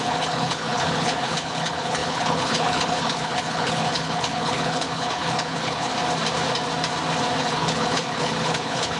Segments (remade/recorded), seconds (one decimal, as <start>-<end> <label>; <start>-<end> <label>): 0.0-5.9 remade; 5.9-7.4 recorded; 7.4-9.0 remade